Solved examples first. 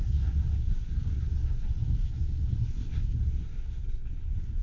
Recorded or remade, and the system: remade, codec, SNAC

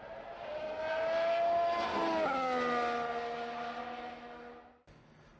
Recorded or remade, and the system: recorded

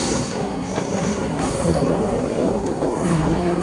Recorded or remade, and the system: remade, codec, SNAC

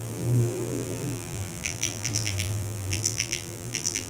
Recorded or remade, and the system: remade, vocoder, BigVGAN v2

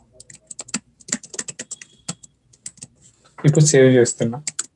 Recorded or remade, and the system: recorded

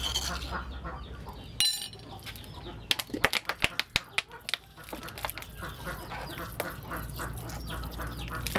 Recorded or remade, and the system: recorded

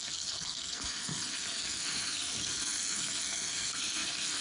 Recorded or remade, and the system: remade, codec, SNAC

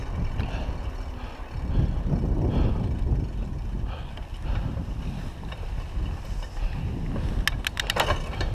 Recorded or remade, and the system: recorded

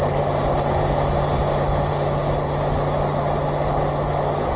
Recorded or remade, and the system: recorded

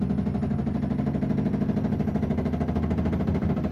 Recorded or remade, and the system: recorded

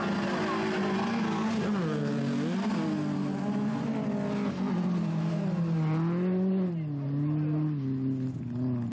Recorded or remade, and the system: recorded